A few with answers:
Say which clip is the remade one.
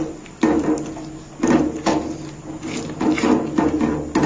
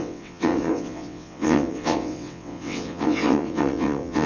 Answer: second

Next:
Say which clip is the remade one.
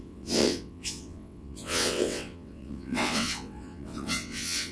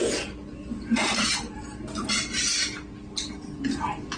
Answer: first